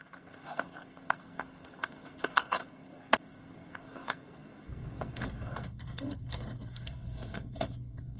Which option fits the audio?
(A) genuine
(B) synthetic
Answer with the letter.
B